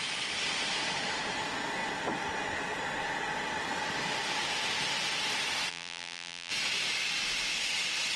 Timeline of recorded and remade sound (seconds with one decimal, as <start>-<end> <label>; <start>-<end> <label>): 0.0-5.7 recorded; 5.7-6.5 remade; 6.5-8.2 recorded